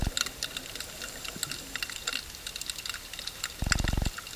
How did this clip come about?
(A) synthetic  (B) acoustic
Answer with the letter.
B